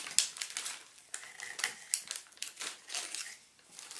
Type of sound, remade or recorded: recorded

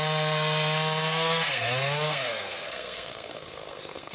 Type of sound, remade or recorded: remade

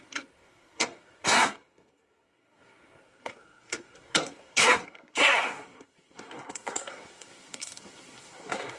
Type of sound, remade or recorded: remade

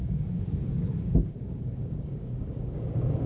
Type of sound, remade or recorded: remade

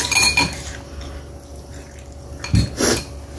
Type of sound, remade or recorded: recorded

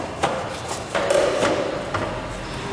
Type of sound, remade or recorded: recorded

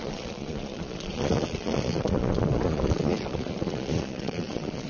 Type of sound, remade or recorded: remade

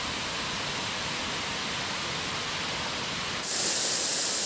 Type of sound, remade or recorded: recorded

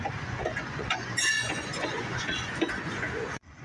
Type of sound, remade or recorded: remade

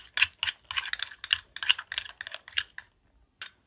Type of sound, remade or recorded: recorded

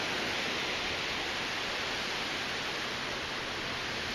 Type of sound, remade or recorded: recorded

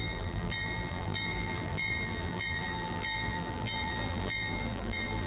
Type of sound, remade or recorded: remade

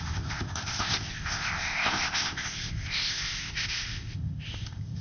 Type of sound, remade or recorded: remade